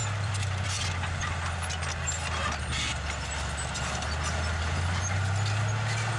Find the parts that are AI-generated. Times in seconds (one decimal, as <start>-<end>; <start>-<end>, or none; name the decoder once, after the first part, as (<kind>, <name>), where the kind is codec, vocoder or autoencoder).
0.0-0.8 (vocoder, BigVGAN v2)